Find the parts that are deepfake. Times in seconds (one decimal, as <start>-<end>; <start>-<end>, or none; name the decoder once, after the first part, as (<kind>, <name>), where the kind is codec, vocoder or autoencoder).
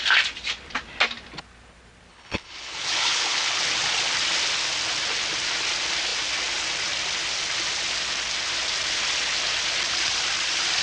2.1-3.6 (codec, HILCodec)